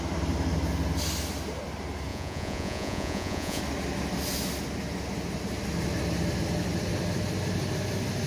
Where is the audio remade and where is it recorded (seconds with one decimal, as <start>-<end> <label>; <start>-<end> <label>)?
0.0-2.1 recorded; 2.1-3.6 remade; 3.6-8.3 recorded